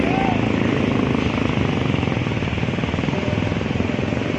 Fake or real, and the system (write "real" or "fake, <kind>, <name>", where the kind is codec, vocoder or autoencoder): real